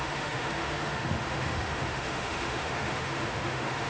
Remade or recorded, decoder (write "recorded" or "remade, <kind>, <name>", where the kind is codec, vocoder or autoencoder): remade, autoencoder, DAC-VAE